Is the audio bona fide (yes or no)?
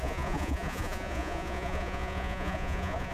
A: no